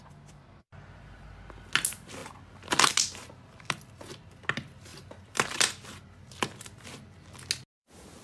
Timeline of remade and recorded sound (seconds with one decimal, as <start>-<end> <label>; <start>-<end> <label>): 0.0-8.2 recorded